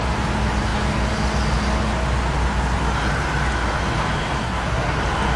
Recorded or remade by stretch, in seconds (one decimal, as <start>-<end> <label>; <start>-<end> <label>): 0.0-4.4 recorded; 4.4-5.0 remade; 5.0-5.4 recorded